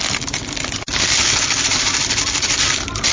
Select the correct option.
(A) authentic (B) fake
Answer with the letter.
A